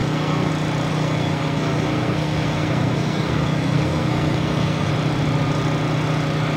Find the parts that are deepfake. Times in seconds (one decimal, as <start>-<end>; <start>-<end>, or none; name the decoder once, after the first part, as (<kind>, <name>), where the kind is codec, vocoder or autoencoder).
0.0-0.5 (codec, SNAC); 0.9-4.9